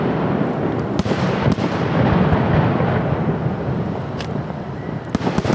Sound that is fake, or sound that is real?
real